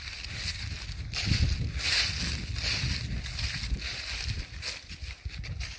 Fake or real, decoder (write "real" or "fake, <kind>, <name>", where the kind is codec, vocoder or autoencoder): real